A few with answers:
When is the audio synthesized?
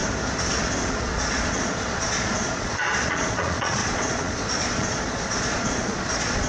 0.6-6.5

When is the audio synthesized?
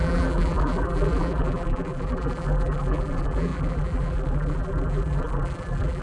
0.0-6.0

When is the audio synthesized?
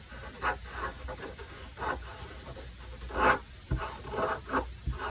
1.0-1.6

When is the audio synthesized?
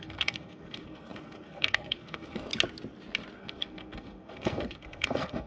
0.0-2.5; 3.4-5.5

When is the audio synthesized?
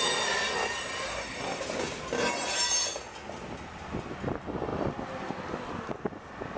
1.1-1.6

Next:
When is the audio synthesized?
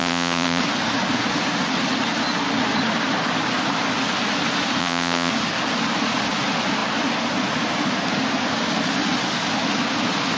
0.0-0.6; 4.8-5.3